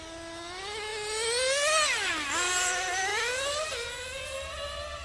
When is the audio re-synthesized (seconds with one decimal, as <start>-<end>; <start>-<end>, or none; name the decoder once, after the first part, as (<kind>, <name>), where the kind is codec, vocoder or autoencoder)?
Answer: none